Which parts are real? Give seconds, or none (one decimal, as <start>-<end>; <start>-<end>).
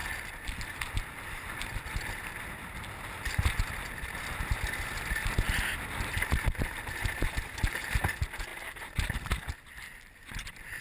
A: 0.0-10.8